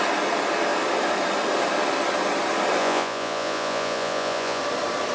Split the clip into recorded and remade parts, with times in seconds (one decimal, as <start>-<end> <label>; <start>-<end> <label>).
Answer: 0.0-2.8 recorded; 2.8-4.6 remade; 4.6-5.1 recorded